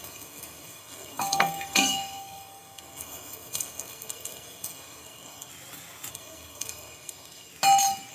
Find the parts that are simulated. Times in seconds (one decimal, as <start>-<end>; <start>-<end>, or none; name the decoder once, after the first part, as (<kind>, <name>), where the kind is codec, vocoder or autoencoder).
0.0-5.5 (codec, SNAC); 6.1-7.5